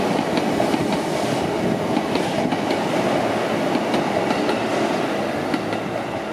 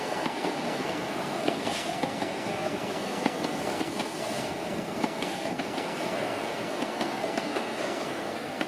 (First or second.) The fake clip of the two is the second